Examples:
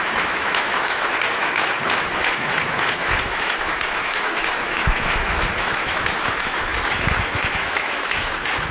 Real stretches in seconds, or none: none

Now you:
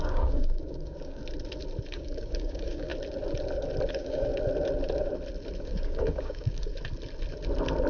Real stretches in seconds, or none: 1.2-1.9; 2.9-3.9; 4.3-5.6; 6.7-7.9

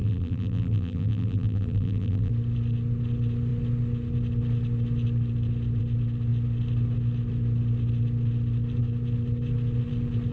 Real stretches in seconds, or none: 2.3-10.3

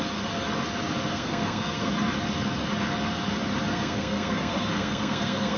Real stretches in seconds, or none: 0.0-1.1; 1.9-3.7